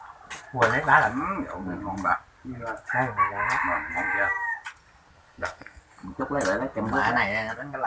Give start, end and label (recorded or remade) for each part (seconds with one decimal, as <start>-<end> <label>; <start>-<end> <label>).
0.0-5.1 recorded; 5.1-5.8 remade; 5.8-7.9 recorded

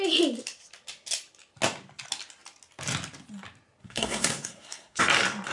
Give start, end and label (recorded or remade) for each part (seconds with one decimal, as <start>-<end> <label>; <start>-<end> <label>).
0.0-3.8 recorded; 3.8-5.0 remade; 5.0-5.5 recorded